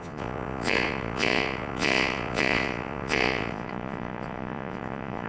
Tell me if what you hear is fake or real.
fake